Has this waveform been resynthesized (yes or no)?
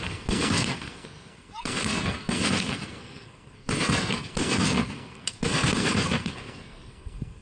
yes